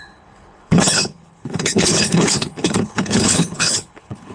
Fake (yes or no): yes